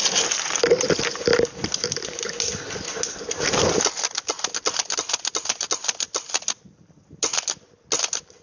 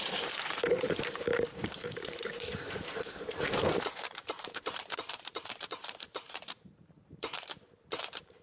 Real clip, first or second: first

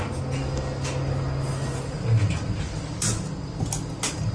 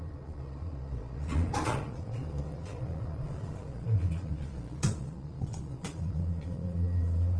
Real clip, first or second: first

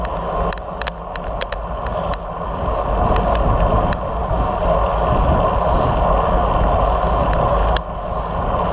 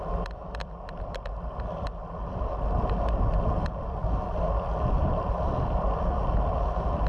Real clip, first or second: first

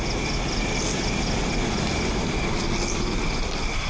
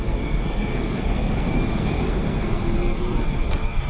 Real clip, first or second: first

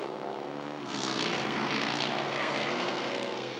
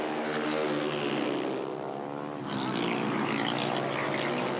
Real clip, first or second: second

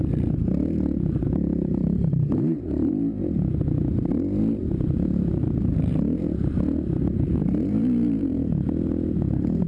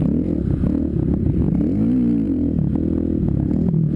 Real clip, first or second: second